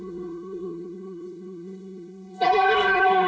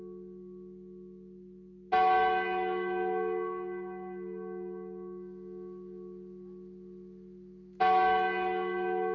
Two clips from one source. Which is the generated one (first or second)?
first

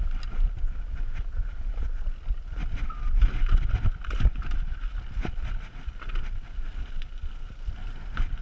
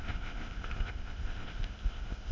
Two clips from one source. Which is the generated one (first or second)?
second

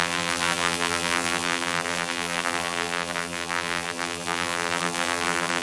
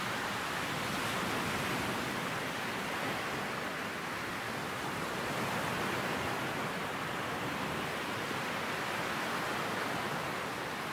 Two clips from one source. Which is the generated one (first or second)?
first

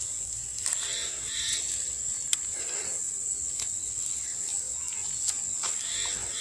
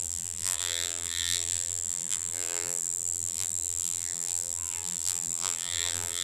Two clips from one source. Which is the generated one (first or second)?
second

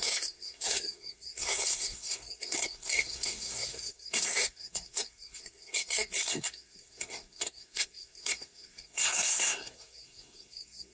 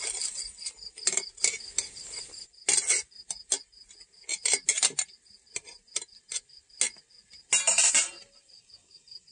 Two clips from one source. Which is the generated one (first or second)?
first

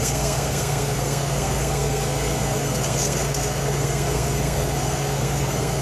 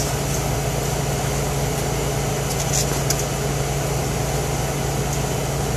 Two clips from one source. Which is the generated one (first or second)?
first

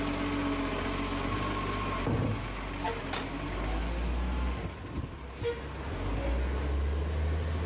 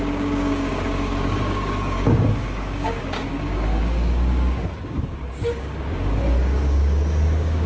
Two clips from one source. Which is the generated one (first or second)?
second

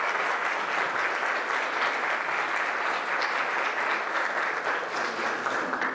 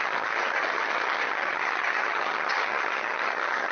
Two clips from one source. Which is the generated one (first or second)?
second